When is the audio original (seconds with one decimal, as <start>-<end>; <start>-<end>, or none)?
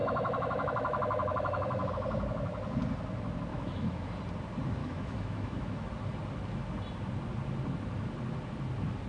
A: 1.9-3.5; 4.1-4.8; 5.9-9.1